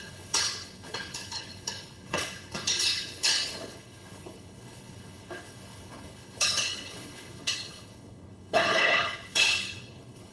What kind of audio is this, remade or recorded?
remade